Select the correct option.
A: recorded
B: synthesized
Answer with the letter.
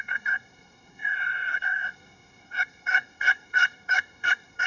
B